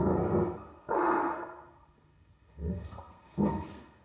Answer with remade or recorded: remade